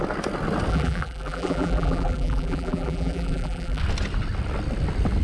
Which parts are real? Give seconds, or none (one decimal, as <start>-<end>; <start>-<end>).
0.0-0.7; 3.8-5.2